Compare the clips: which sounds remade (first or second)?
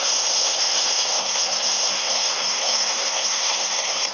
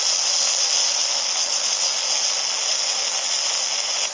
first